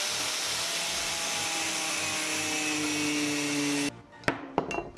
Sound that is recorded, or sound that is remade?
recorded